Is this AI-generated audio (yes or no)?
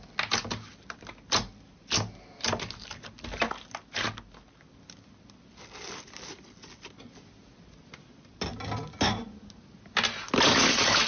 no